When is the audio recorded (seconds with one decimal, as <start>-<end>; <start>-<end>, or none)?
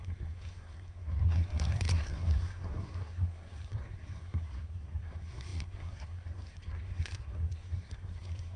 none